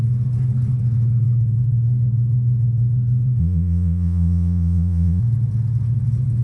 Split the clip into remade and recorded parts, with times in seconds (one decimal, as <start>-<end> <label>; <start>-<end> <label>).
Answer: 0.0-3.4 recorded; 3.4-5.2 remade; 5.2-6.4 recorded